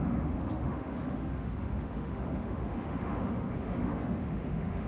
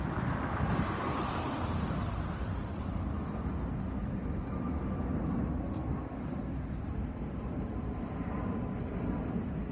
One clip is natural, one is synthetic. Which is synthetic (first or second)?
first